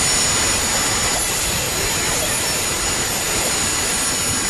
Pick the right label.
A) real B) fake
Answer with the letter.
A